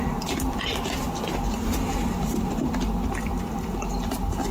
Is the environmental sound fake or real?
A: real